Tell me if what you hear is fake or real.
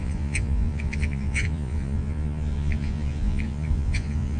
fake